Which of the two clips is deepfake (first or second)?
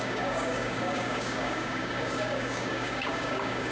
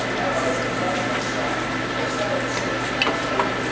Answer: first